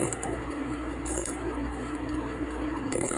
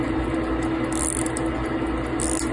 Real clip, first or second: second